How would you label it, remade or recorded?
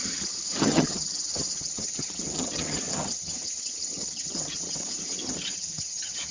remade